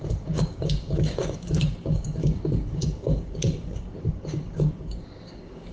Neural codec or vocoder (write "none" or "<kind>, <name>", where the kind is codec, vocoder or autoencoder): codec, DAC